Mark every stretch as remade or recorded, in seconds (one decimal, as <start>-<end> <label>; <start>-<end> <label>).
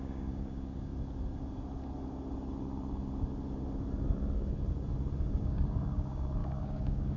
0.0-0.9 remade; 0.9-5.2 recorded; 5.2-7.2 remade